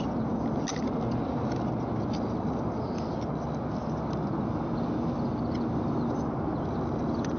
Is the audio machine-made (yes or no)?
no